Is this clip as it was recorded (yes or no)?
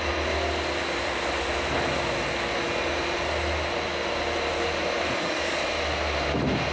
yes